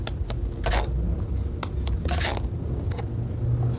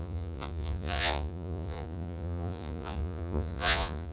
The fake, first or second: second